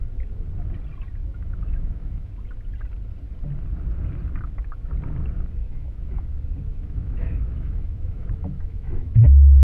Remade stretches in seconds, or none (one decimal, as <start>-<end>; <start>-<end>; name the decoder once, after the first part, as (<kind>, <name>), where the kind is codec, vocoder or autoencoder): 1.2-2.3 (autoencoder, DAC-VAE); 5.6-6.2; 6.7-9.2

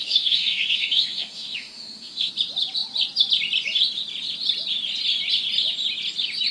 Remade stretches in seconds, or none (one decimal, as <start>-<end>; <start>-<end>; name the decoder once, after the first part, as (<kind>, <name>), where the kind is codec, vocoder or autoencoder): 0.0-2.3 (autoencoder, DAC-VAE)

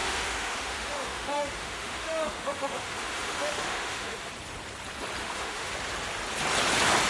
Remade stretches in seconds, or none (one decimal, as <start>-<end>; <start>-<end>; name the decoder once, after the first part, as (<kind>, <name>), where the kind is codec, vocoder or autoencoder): 0.0-4.3 (autoencoder, DAC-VAE); 5.2-5.7

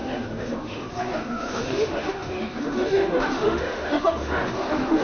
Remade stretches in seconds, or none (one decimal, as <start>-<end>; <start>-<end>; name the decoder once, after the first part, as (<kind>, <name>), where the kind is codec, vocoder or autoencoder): 0.0-5.0 (autoencoder, DAC-VAE)